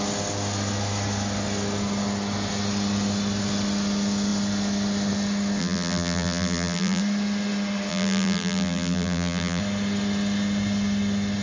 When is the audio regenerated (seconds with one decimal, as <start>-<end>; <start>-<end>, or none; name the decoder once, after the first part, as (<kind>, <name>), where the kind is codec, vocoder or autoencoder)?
5.6-7.0 (vocoder, BigVGAN v2); 7.9-9.6